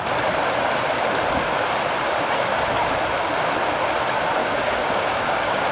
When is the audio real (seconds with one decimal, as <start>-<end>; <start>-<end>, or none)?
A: 0.0-4.4